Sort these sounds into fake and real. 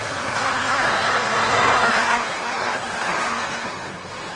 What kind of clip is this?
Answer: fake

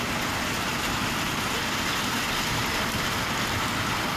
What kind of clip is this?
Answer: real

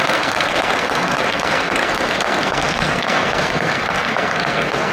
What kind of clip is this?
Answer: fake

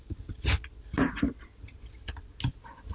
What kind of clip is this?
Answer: real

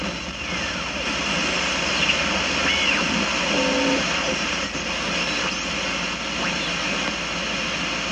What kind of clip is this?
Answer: real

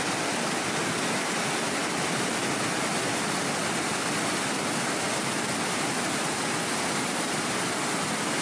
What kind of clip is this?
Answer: real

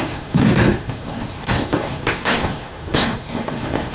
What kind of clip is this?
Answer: fake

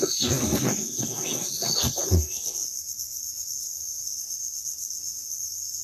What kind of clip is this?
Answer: fake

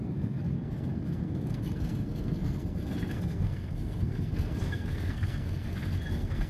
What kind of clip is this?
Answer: fake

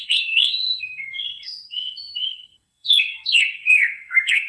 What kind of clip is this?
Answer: fake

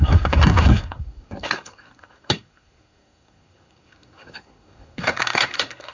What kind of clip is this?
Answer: fake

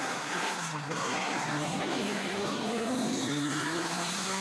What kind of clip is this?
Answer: fake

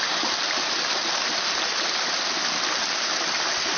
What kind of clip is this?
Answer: real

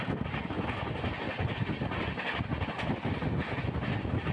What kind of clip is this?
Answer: real